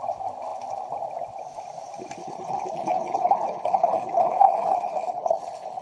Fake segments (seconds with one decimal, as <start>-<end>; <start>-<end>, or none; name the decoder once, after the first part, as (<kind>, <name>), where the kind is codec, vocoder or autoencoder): 2.2-5.8 (codec, HILCodec)